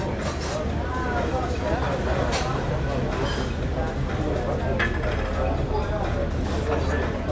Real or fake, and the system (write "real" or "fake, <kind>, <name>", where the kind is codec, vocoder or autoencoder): real